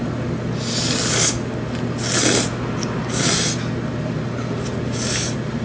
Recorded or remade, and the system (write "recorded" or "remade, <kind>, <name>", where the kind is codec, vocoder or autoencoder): recorded